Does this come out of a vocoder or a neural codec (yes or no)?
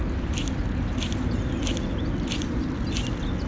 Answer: no